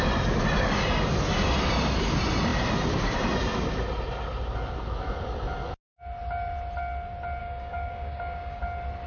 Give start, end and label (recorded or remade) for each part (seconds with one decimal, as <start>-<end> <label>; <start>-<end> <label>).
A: 0.0-7.4 recorded; 7.4-8.6 remade; 8.6-9.1 recorded